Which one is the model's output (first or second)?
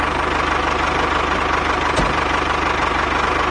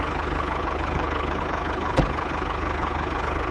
second